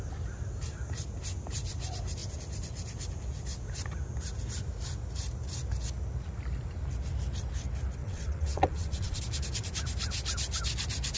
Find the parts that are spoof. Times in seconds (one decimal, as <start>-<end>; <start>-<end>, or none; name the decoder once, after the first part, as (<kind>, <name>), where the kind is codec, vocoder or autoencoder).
8.0-9.2 (vocoder, WaveNeXt)